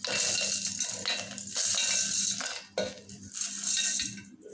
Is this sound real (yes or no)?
yes